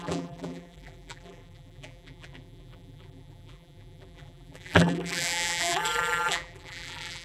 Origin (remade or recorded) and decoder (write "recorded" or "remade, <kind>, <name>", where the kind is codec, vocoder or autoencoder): remade, vocoder, BigVGAN v2